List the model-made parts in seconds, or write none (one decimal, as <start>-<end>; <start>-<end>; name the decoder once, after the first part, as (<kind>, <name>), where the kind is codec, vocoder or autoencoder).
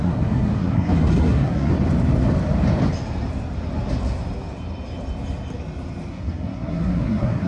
0.0-1.7 (codec, SNAC); 6.1-7.5